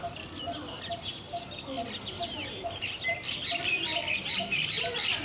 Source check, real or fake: fake